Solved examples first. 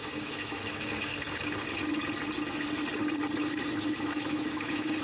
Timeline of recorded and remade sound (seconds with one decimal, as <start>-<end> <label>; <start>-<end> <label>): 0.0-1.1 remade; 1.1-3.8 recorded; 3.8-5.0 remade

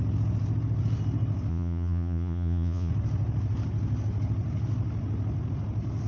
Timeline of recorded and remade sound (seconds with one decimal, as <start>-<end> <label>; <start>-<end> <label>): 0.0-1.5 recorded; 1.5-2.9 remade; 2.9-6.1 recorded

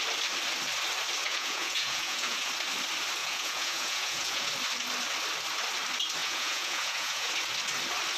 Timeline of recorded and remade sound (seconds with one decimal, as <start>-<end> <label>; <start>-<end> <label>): 0.0-1.2 recorded; 1.2-2.5 remade; 2.5-3.2 recorded; 3.2-4.5 remade; 4.5-6.2 recorded; 6.2-7.3 remade; 7.3-8.2 recorded